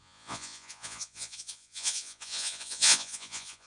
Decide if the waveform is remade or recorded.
remade